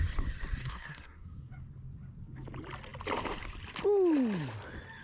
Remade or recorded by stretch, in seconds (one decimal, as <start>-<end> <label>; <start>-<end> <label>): 0.0-0.6 recorded; 0.6-1.5 remade; 1.5-5.0 recorded